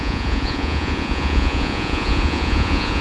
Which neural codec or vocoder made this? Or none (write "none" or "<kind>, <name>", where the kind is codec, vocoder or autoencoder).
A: vocoder, Vocos